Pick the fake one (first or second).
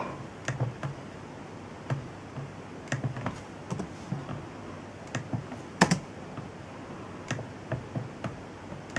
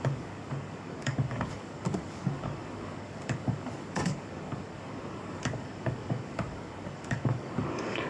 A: second